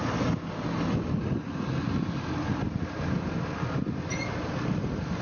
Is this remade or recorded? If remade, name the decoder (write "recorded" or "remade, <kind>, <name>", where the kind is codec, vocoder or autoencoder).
recorded